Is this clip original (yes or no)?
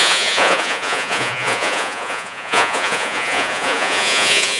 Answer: no